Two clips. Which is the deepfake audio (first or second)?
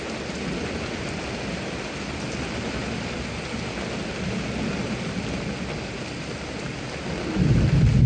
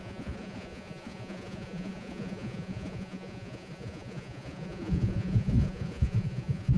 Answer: second